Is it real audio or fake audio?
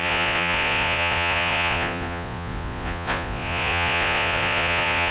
fake